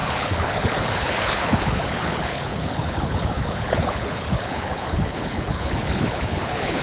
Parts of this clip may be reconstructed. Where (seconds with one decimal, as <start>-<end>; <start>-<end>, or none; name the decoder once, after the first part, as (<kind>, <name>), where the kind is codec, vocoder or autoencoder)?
0.0-6.8 (codec, HILCodec)